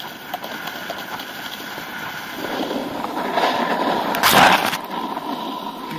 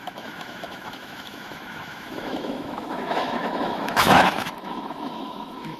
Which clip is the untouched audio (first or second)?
first